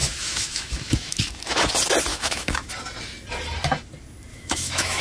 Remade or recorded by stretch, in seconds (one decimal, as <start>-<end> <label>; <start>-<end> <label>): 0.0-1.7 remade; 1.7-2.1 recorded; 2.1-2.7 remade; 2.7-4.3 recorded; 4.3-5.0 remade